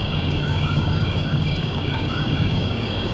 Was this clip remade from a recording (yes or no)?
yes